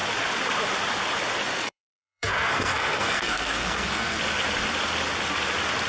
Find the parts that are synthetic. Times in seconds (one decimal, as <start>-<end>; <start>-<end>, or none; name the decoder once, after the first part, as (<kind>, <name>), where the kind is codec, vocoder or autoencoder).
1.5-4.2 (codec, SNAC)